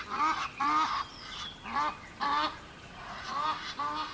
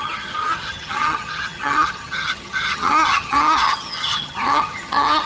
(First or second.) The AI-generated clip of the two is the second